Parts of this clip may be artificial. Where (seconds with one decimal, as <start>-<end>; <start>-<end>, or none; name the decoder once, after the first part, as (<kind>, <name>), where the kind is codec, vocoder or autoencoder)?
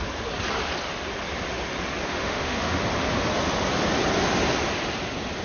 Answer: 2.1-2.8 (autoencoder, DAC-VAE)